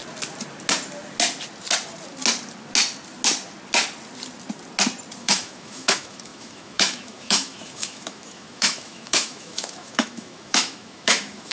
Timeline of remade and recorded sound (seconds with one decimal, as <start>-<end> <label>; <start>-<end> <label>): 0.0-5.2 recorded; 5.2-11.5 remade